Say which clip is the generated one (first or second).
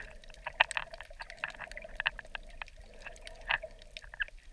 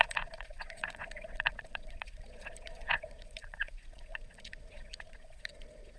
second